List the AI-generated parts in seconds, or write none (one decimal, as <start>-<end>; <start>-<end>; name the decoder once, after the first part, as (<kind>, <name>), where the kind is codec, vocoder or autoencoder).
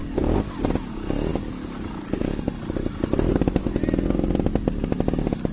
none